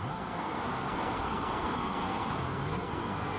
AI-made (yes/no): yes